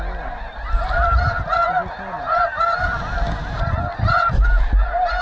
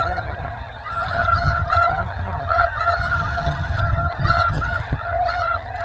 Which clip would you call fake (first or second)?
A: second